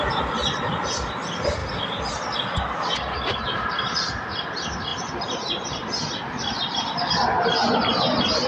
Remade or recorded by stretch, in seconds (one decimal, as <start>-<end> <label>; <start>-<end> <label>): 0.0-8.5 recorded